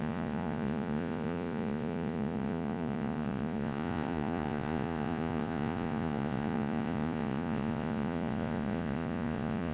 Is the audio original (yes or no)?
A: no